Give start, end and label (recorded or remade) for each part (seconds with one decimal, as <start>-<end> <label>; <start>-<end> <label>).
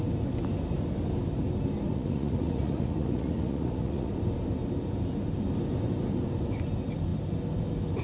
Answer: 0.0-1.9 recorded; 1.9-4.1 remade; 4.1-8.0 recorded